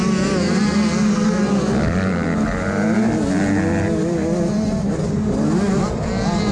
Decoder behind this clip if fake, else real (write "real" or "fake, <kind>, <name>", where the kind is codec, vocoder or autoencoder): real